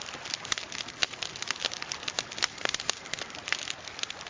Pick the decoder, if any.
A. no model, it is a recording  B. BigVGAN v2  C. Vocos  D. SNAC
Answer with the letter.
A